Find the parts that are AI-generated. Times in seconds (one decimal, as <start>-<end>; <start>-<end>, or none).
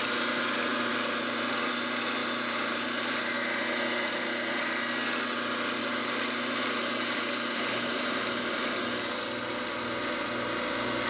0.9-1.7; 2.2-3.1; 5.8-8.8